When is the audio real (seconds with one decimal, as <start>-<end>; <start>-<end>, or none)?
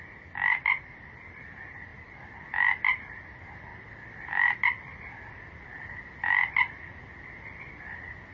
0.0-1.9; 3.1-3.7; 7.0-8.3